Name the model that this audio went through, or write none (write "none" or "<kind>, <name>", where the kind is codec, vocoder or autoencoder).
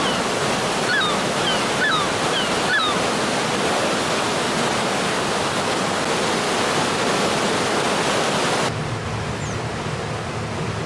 none